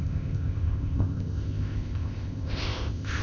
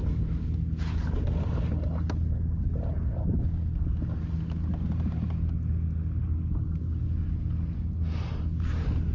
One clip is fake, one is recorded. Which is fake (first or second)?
first